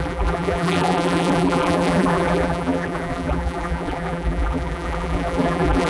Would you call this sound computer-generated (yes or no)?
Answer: yes